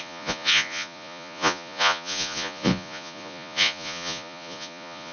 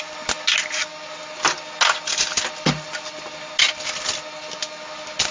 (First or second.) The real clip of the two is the second